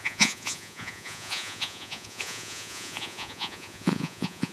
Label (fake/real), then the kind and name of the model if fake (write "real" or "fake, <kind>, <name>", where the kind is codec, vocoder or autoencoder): fake, vocoder, Vocos